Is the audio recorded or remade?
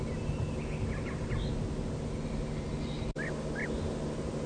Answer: recorded